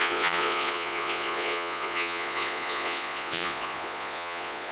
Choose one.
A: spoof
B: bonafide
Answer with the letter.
A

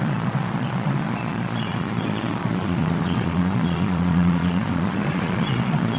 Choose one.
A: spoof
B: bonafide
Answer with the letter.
A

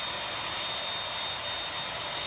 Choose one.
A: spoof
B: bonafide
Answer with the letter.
B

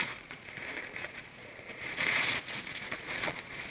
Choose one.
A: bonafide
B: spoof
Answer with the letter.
B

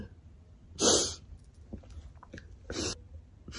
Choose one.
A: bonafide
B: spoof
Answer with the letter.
A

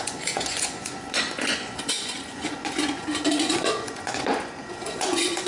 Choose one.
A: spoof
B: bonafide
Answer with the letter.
A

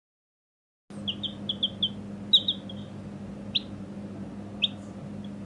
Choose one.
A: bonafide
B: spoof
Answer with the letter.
A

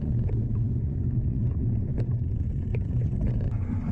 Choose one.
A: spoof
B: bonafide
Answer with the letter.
A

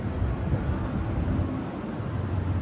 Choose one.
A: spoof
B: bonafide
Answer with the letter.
B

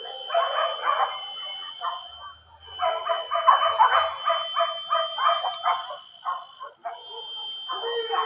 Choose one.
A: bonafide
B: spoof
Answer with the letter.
A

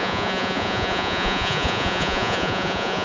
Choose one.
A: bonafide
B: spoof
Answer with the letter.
B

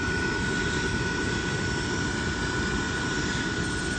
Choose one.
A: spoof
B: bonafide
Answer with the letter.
B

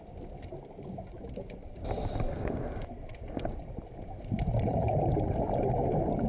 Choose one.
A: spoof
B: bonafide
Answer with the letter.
B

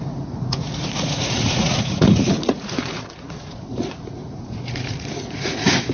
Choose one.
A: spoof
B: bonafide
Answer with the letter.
A